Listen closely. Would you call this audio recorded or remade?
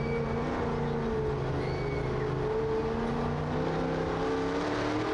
recorded